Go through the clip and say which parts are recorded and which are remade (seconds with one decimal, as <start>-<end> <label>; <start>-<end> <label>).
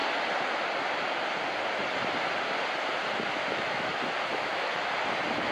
0.0-3.4 recorded; 3.4-3.9 remade; 3.9-4.3 recorded; 4.3-4.9 remade; 4.9-5.5 recorded